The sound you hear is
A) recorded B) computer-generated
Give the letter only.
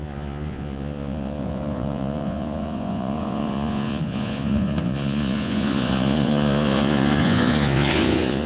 B